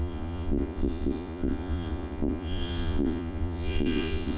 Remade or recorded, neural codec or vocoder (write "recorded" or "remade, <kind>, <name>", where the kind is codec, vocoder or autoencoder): remade, vocoder, Vocos